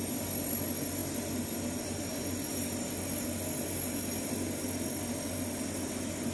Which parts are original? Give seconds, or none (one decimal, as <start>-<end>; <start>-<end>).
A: 0.0-6.3